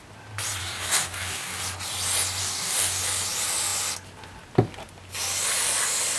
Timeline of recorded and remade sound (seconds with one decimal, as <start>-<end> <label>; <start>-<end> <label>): 0.0-0.6 recorded; 0.6-1.6 remade; 1.6-2.4 recorded; 2.4-3.0 remade; 3.0-6.2 recorded